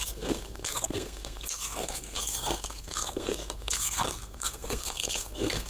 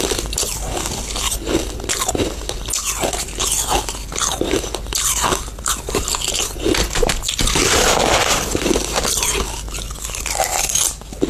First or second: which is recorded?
second